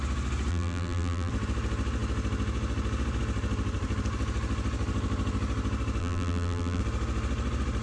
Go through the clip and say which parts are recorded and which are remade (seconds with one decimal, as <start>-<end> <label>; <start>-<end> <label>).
0.0-0.5 recorded; 0.5-1.3 remade; 1.3-6.0 recorded; 6.0-6.8 remade; 6.8-7.8 recorded